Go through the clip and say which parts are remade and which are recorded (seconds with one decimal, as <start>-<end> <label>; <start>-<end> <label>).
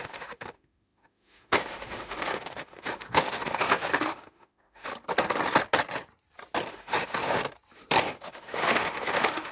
0.0-4.9 remade; 4.9-6.7 recorded; 6.7-7.4 remade; 7.4-8.0 recorded; 8.0-9.5 remade